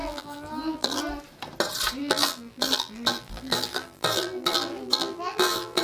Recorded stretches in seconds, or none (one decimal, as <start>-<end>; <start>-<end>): 1.0-2.0